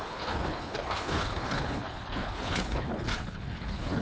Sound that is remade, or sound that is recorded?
remade